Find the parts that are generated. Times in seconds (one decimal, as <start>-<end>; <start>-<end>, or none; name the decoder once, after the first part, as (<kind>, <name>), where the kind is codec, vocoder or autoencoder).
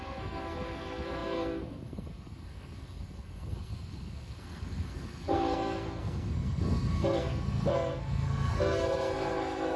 0.0-9.8 (codec, SNAC)